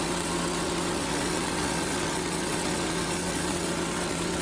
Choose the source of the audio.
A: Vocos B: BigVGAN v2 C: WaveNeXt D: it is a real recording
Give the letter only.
C